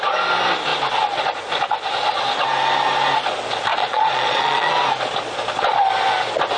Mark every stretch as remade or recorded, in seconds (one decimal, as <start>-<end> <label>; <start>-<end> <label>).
0.0-3.7 recorded; 3.7-4.7 remade; 4.7-6.6 recorded